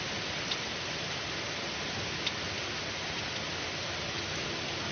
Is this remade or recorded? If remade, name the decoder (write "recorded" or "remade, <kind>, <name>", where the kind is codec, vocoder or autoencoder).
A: recorded